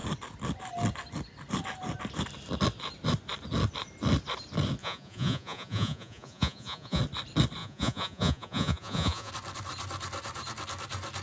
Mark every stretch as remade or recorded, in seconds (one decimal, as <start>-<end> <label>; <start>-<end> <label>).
0.0-4.8 recorded; 4.8-7.0 remade; 7.0-7.6 recorded; 7.6-9.3 remade; 9.3-11.2 recorded